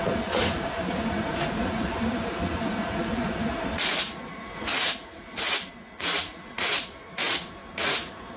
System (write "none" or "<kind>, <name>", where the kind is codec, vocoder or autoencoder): vocoder, Vocos